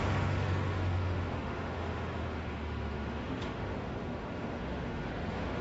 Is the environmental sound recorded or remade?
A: remade